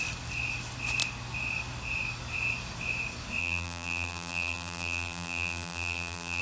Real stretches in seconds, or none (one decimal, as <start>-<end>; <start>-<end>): 0.0-3.4